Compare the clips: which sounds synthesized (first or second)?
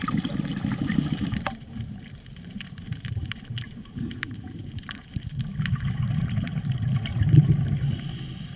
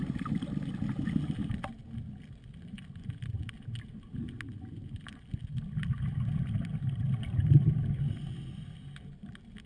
first